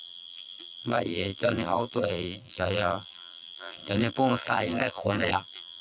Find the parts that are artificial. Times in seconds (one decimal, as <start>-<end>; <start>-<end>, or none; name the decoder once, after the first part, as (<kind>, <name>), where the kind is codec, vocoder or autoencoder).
0.0-5.8 (vocoder, BigVGAN v2)